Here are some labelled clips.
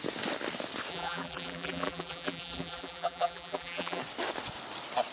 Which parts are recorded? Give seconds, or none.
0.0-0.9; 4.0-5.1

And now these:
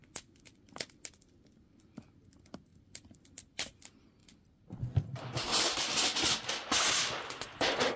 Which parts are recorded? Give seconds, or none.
0.0-8.0